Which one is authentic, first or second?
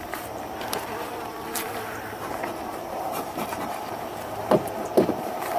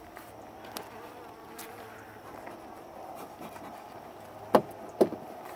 second